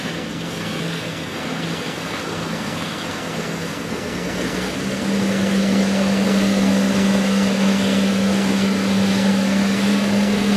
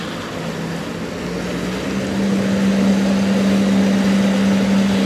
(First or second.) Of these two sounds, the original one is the second